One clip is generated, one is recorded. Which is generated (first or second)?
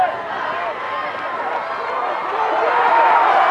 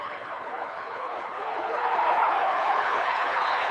second